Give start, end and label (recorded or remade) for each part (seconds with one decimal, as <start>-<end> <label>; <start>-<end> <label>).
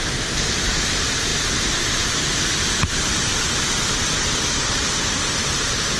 0.0-6.0 recorded